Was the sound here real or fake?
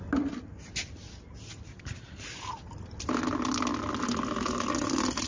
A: real